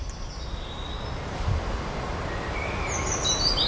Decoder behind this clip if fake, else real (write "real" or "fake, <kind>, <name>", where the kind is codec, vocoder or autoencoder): real